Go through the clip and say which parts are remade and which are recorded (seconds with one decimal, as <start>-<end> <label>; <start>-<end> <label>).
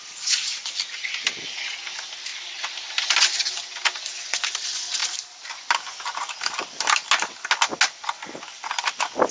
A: 0.0-9.3 recorded